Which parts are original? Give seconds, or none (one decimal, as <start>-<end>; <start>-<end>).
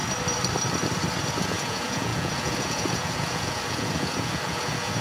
0.0-1.4